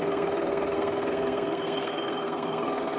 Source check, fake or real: fake